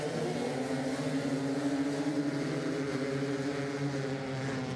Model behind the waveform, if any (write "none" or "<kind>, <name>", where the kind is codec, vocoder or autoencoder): none